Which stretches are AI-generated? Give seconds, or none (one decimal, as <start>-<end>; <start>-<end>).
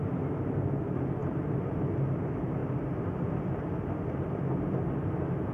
1.2-1.7